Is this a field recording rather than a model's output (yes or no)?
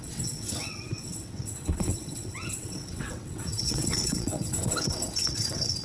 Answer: no